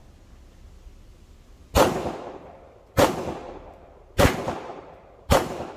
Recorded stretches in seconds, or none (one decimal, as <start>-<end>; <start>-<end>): 0.0-3.5

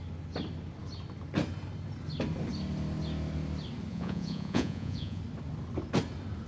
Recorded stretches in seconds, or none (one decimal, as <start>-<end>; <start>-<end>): 0.0-3.9; 5.2-6.5

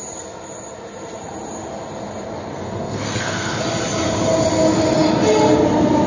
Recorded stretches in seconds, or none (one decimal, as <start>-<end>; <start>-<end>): 0.0-2.5; 3.6-6.1

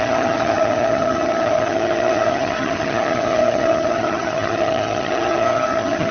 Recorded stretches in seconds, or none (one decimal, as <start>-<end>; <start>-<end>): none

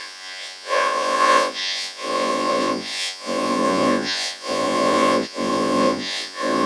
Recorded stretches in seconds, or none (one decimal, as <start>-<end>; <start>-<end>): none

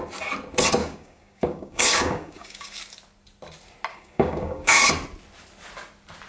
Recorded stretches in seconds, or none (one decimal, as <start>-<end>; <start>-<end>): 0.0-0.8; 2.8-3.9; 4.9-6.3